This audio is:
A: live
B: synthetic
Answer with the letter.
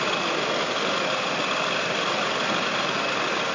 A